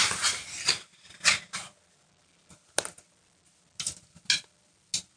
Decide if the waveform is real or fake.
real